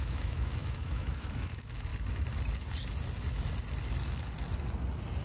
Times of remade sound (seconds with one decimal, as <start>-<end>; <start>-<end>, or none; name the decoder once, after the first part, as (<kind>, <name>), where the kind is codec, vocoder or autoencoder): 0.0-1.9 (autoencoder, DAC-VAE)

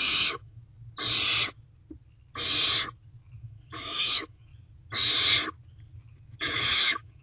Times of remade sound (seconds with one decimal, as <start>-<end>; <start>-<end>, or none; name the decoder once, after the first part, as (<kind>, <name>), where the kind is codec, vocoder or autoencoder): 0.0-0.6 (autoencoder, DAC-VAE); 3.4-4.5; 6.4-7.2

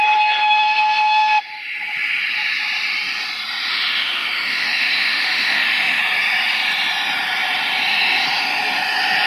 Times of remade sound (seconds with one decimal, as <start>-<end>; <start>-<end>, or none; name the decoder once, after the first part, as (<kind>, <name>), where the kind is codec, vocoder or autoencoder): 0.4-1.4 (autoencoder, DAC-VAE); 3.7-6.0

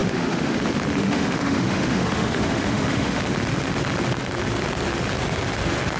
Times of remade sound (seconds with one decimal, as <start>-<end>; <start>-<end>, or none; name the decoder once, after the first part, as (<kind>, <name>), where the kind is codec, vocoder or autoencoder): 0.0-0.6 (autoencoder, DAC-VAE); 1.0-3.2

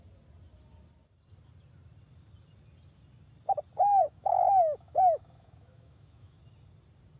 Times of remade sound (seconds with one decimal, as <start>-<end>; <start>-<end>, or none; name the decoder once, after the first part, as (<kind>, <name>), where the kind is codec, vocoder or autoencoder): 4.0-6.4 (autoencoder, DAC-VAE)

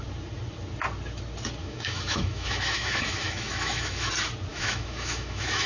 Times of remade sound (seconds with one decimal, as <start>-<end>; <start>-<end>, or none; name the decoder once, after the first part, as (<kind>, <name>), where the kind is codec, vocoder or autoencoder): 1.6-4.1 (autoencoder, DAC-VAE); 4.5-5.7

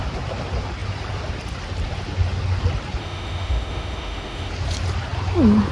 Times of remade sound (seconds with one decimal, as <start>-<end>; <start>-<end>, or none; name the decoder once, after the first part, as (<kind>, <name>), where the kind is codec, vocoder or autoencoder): 3.0-4.5 (autoencoder, DAC-VAE)

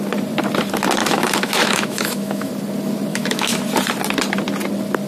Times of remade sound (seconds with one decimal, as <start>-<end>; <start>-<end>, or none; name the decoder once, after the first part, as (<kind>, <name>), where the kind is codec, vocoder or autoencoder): 1.0-2.5 (autoencoder, DAC-VAE); 3.1-3.6